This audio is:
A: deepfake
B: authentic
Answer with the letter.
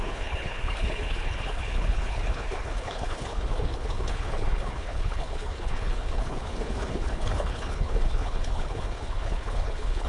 A